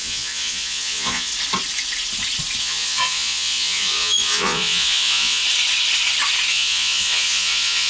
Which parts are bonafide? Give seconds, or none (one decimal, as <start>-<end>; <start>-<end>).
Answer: 1.3-2.6; 5.4-6.5